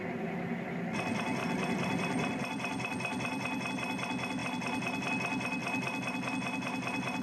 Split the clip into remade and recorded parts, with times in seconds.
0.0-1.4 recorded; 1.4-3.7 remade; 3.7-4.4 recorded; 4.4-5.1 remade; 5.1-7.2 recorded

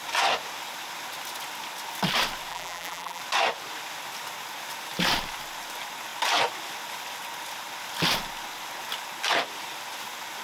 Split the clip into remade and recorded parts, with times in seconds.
0.0-2.5 recorded; 2.5-3.2 remade; 3.2-10.4 recorded